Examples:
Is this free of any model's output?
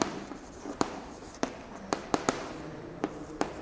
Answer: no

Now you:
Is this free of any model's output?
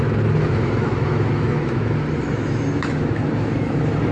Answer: no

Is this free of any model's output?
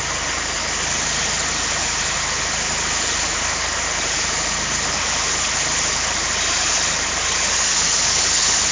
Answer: yes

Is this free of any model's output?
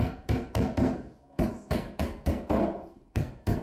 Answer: no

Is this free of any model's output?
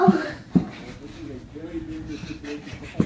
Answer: yes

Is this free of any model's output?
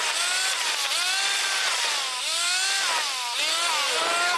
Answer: yes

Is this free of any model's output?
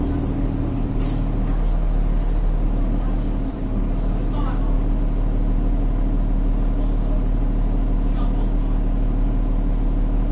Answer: yes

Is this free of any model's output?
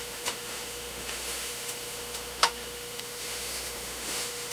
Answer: no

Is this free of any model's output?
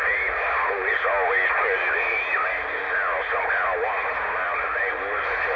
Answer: yes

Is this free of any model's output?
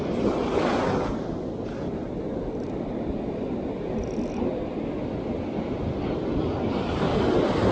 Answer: yes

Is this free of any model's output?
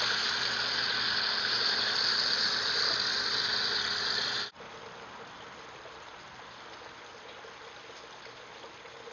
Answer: yes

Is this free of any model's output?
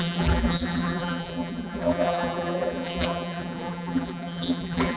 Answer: no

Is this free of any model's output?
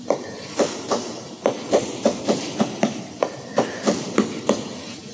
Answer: yes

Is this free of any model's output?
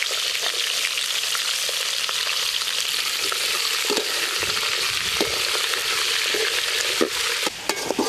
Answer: yes